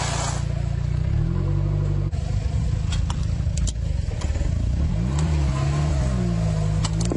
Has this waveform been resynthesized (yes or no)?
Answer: no